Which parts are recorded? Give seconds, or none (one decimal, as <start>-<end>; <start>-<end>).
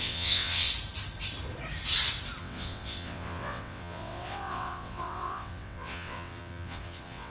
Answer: 0.7-2.4